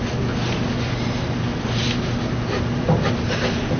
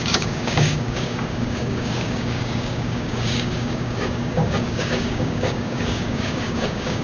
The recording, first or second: first